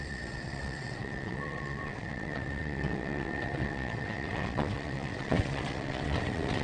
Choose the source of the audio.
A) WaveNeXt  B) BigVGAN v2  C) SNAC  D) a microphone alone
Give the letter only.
A